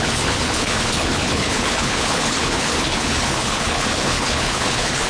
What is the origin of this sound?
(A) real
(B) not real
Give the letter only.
B